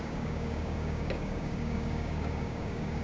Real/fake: fake